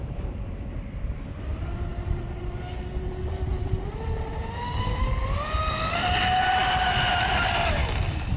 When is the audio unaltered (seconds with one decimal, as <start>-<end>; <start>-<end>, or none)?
0.0-8.4